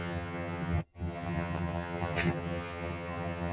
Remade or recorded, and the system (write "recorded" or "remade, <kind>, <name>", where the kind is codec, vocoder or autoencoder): remade, vocoder, HiFi-GAN